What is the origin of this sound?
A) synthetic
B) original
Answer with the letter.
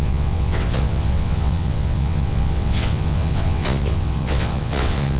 A